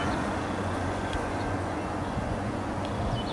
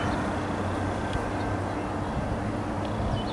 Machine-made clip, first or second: first